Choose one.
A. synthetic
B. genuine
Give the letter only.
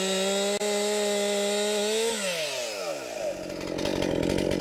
B